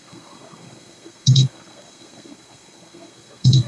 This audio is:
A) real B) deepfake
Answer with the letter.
B